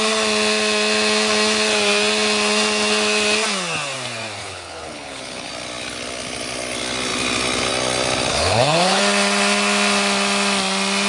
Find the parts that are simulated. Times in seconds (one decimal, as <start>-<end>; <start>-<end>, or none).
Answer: 4.4-5.5; 8.3-9.0